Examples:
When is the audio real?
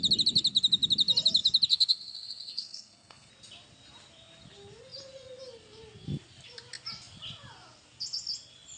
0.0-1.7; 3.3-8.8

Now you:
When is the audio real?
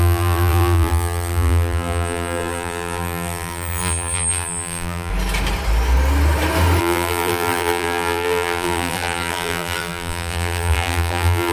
5.1-6.8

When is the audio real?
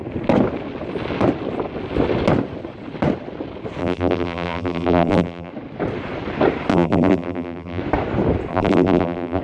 0.0-3.8; 5.5-6.7; 7.8-8.5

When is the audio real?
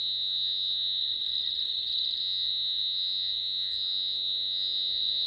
1.0-2.2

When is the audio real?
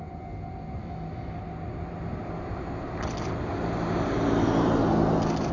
0.0-0.8; 1.4-5.5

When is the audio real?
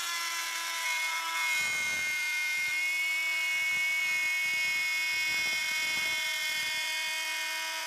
0.0-7.9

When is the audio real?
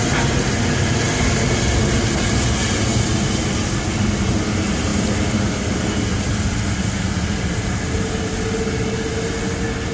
0.0-9.9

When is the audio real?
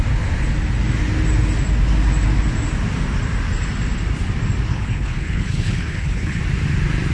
0.0-4.7; 6.4-7.1